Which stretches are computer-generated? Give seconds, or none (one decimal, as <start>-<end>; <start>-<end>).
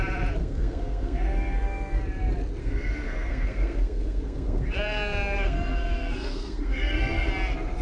0.4-2.0; 2.6-7.3